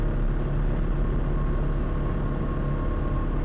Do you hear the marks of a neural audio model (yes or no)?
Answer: no